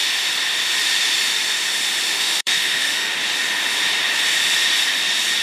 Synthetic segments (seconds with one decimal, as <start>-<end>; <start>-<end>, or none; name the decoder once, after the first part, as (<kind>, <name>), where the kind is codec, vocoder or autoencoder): 2.1-3.1 (autoencoder, DAC-VAE)

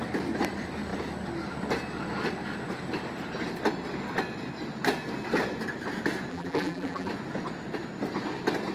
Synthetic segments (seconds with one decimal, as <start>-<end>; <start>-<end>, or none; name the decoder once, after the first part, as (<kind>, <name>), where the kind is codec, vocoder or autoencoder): 6.3-7.1 (vocoder, BigVGAN v2)

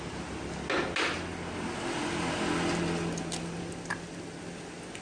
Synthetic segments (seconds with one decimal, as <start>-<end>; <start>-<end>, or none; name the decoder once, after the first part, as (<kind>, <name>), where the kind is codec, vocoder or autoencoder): none